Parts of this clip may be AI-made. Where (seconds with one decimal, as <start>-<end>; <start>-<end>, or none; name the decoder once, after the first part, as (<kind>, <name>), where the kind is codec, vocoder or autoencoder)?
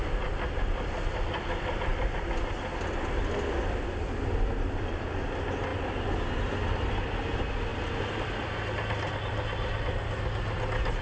none